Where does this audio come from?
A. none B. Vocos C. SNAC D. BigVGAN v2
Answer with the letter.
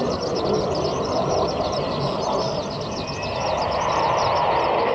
A